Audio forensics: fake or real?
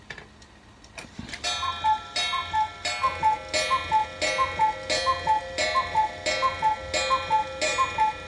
real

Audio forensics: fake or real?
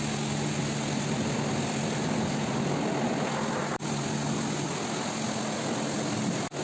real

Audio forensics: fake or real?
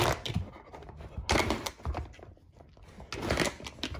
real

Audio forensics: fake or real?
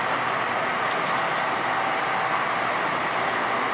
real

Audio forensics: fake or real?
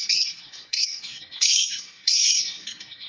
fake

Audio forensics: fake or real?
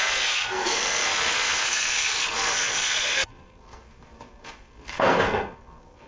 fake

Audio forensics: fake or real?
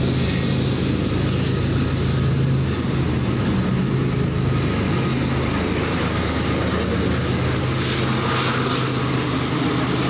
real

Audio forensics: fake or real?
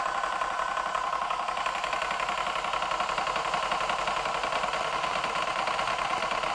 real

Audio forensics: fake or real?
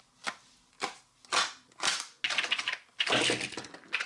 real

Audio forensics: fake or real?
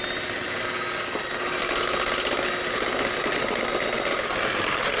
real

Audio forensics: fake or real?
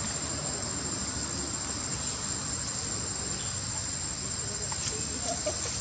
real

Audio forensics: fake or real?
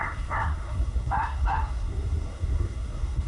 fake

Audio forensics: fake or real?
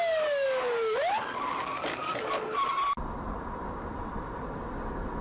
real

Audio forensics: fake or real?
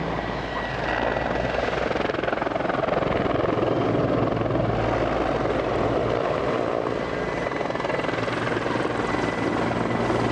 real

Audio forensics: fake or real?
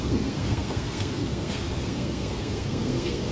fake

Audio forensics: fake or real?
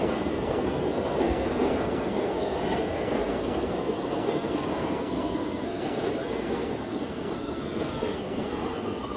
fake